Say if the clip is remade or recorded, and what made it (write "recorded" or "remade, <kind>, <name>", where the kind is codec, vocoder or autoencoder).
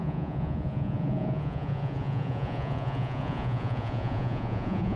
remade, vocoder, Vocos